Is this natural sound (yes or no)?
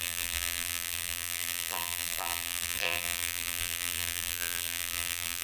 no